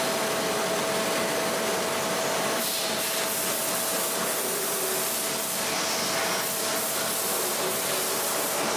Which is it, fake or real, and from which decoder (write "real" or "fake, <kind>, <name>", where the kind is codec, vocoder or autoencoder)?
real